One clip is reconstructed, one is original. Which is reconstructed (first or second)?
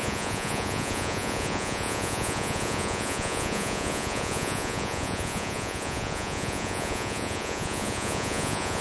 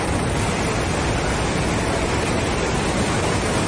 first